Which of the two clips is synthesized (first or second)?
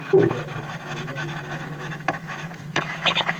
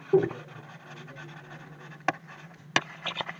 first